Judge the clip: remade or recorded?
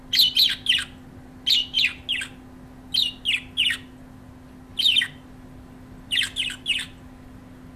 recorded